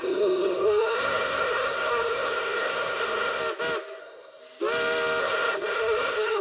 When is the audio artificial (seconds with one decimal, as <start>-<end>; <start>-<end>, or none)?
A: 0.0-3.4; 4.0-4.4; 5.2-6.4